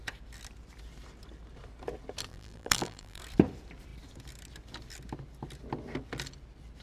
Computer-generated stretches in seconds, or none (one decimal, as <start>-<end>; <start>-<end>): 2.3-3.2